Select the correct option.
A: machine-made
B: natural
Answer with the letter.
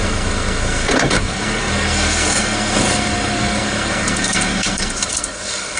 A